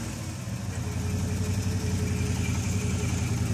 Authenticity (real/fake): real